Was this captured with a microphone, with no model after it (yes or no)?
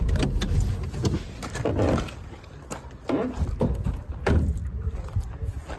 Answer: yes